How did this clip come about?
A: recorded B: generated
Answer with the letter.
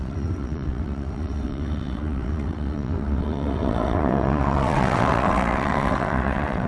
B